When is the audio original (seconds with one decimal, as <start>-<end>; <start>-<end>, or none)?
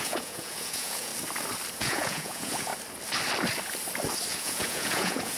1.1-1.7; 2.7-4.3